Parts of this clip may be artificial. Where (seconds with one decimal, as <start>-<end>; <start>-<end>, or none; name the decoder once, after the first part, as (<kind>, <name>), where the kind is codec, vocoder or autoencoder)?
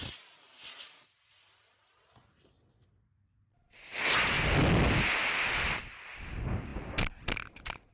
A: none